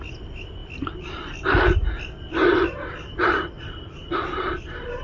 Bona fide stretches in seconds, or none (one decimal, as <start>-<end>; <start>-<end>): 0.0-5.0

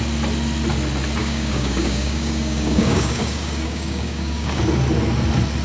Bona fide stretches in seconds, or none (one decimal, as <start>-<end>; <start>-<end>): 0.0-1.2; 4.6-5.6